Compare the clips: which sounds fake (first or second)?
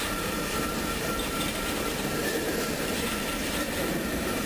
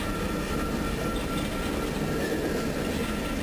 first